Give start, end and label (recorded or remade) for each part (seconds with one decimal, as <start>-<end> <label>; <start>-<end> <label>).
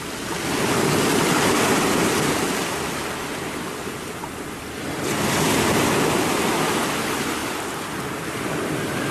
0.0-9.1 recorded